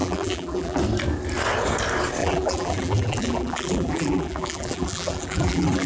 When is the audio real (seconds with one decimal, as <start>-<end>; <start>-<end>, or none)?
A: 0.8-2.2